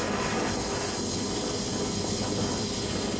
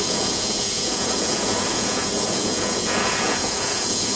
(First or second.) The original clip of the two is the first